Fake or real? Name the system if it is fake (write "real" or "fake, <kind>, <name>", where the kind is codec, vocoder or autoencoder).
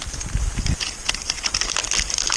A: real